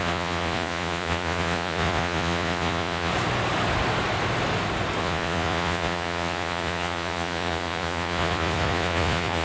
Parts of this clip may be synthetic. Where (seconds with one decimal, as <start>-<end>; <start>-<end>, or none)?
0.0-3.1; 5.0-9.4